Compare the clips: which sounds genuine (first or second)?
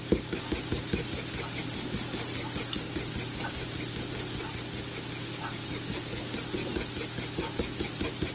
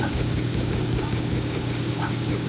first